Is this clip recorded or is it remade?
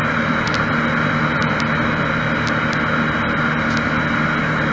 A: recorded